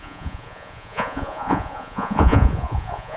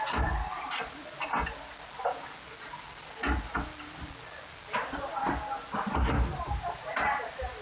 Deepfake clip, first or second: first